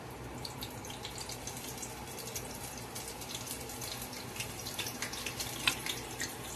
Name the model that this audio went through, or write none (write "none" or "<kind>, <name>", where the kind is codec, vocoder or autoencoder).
none